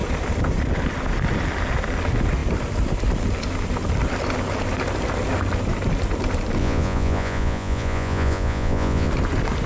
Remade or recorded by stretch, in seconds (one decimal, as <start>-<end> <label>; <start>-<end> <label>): 0.0-6.6 recorded; 6.6-9.1 remade; 9.1-9.7 recorded

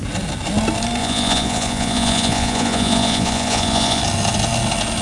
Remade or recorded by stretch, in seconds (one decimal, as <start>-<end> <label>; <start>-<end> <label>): 0.0-1.0 recorded; 1.0-4.0 remade; 4.0-5.0 recorded

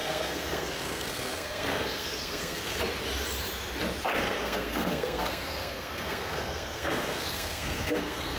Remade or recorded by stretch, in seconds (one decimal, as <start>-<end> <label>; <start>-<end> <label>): 0.0-2.8 remade; 2.8-4.1 recorded; 4.1-8.4 remade

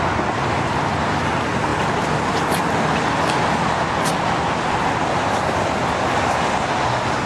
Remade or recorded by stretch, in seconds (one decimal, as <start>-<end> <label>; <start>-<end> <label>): 0.0-7.3 recorded

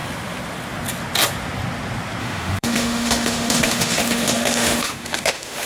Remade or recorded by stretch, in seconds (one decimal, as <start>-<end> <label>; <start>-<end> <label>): 0.0-2.2 recorded; 2.2-5.7 remade